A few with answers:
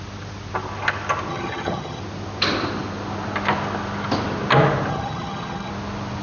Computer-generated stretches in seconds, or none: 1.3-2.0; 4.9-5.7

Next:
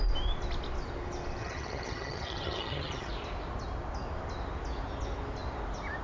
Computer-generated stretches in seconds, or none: 1.4-3.1

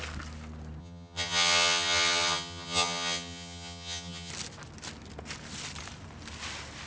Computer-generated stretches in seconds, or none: 0.8-4.3

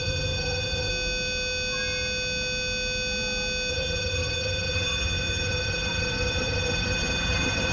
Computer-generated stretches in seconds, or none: 0.0-0.9; 3.7-7.7

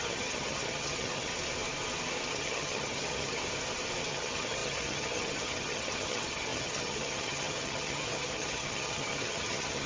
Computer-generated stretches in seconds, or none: 0.0-1.3; 2.3-3.4; 4.1-9.9

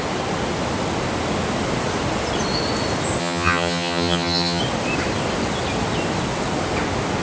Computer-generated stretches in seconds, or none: 3.2-4.6

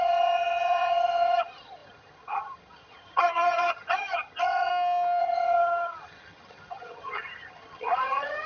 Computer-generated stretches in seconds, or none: 0.0-4.7; 5.2-8.5

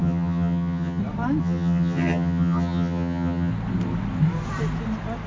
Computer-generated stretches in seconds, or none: 0.0-1.0; 1.4-3.5